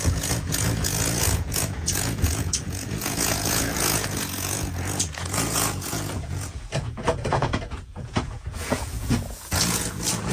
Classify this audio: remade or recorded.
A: remade